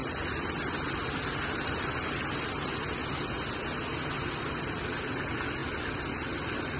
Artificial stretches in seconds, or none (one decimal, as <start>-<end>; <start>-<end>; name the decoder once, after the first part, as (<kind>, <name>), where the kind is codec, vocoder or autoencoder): 5.6-6.8 (vocoder, BigVGAN v2)